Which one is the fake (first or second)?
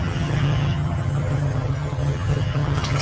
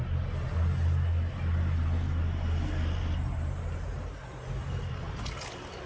first